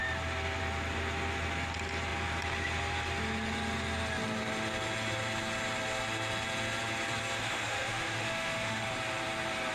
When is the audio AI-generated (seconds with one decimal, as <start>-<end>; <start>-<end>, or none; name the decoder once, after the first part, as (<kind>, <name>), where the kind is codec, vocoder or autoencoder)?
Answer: 7.4-8.9 (autoencoder, DAC-VAE)